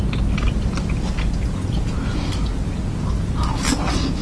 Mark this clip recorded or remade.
recorded